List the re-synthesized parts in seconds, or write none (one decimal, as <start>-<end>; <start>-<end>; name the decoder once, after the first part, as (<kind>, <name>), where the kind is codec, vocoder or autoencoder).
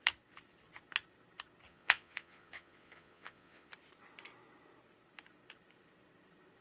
1.7-3.7 (vocoder, Vocos)